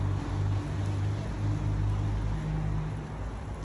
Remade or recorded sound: recorded